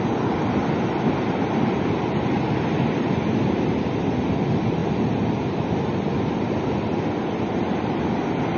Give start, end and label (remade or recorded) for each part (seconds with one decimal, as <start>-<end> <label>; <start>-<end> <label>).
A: 0.0-8.6 recorded